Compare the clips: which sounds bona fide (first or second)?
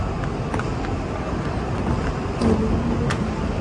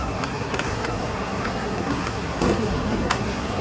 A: first